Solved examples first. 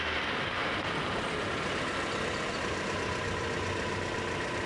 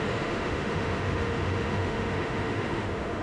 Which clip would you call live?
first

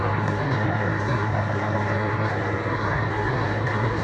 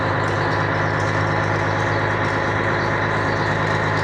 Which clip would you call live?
second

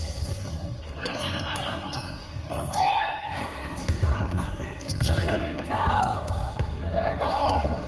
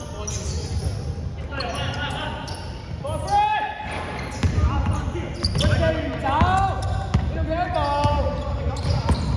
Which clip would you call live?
second